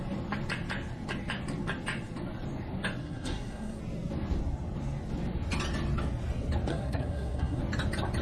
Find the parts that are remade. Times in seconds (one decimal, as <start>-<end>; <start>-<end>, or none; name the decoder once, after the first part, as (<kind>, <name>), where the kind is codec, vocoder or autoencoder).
3.0-3.8 (codec, SNAC); 6.7-7.6